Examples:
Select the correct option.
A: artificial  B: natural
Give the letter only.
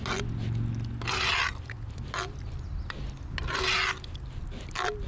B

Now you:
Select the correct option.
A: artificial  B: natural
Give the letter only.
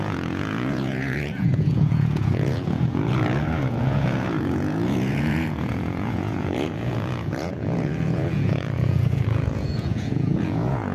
A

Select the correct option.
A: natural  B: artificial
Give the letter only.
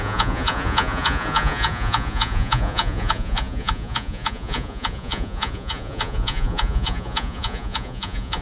B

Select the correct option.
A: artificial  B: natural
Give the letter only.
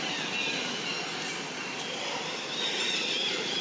B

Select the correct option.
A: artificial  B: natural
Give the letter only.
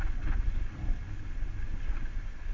B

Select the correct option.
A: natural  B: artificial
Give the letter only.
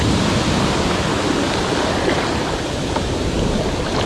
A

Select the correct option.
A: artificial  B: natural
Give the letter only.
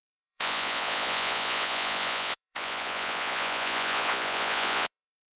A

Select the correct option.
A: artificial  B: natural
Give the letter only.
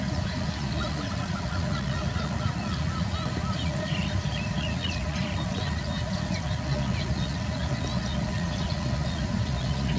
A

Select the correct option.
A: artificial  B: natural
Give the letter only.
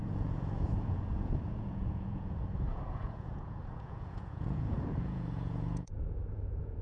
A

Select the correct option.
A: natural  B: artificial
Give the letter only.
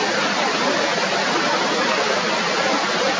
A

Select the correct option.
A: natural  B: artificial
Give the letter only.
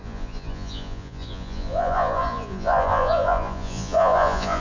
B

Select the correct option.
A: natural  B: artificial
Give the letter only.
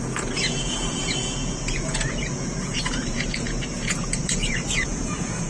B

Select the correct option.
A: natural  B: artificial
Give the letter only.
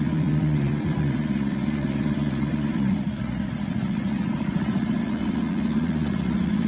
B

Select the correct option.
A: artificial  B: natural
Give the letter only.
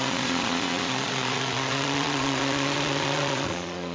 A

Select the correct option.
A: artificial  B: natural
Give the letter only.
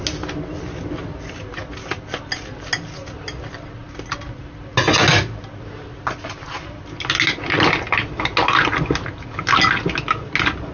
B